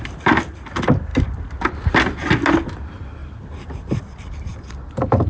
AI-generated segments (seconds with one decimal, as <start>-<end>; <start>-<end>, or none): 3.2-4.0; 4.5-5.3